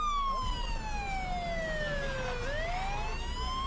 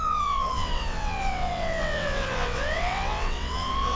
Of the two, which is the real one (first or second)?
first